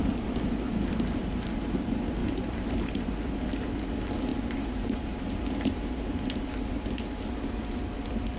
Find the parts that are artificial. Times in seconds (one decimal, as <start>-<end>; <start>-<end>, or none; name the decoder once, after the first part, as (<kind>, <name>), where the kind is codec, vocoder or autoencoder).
2.2-3.1 (vocoder, BigVGAN v2); 4.3-6.5